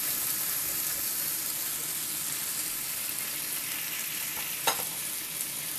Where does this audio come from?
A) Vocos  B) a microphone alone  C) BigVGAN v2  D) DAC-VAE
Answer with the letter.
B